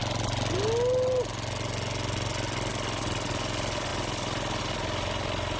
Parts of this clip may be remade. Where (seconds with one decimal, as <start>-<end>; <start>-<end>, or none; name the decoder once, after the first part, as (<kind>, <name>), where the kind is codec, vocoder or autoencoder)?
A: none